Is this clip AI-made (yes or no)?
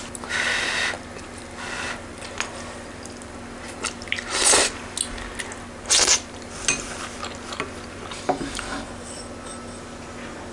no